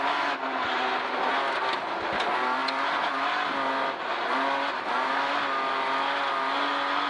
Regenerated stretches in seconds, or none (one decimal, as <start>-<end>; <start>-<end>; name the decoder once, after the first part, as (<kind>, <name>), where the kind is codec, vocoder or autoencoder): none